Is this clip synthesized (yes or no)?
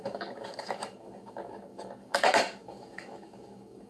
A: yes